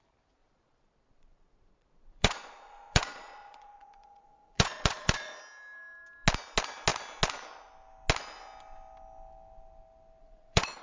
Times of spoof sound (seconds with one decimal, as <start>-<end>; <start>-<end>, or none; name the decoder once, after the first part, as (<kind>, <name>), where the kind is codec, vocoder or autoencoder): 0.4-5.4 (vocoder, Vocos); 10.2-10.8